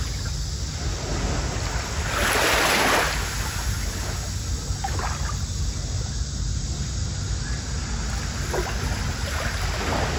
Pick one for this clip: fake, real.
real